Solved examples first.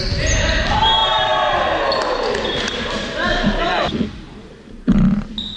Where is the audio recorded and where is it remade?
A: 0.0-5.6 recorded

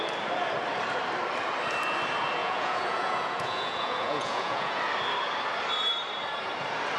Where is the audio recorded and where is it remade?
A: 0.0-2.4 recorded; 2.4-4.8 remade; 4.8-7.0 recorded

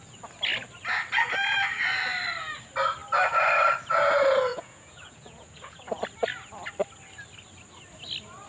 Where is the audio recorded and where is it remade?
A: 0.0-4.5 recorded; 4.5-6.0 remade; 6.0-8.5 recorded

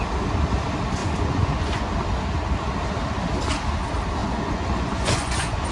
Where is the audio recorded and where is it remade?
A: 0.0-1.0 recorded; 1.0-1.9 remade; 1.9-4.2 recorded; 4.2-5.7 remade